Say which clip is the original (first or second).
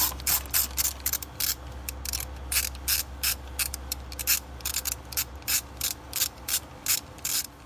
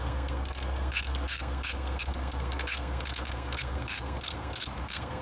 first